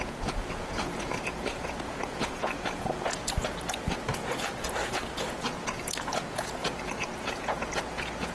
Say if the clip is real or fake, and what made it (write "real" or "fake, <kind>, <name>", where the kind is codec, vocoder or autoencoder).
fake, vocoder, Vocos